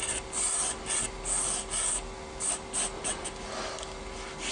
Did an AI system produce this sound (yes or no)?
no